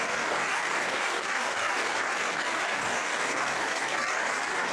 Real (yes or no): no